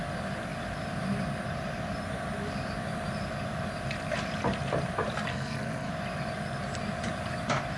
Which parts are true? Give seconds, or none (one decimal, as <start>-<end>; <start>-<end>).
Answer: 0.0-5.3; 5.9-7.8